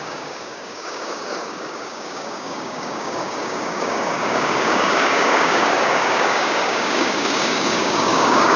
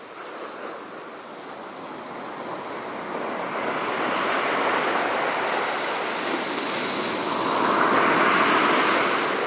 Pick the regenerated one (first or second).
first